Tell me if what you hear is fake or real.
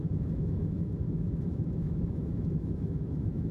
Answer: fake